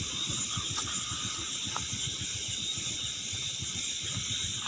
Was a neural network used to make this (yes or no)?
no